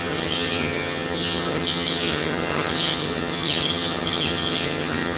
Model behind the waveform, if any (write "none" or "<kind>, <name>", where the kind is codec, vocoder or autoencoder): vocoder, HiFi-GAN